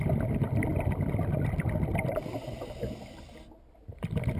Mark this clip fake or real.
fake